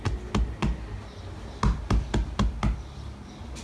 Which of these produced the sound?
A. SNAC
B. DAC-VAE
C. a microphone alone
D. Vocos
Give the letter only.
C